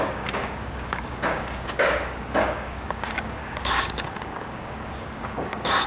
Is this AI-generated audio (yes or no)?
yes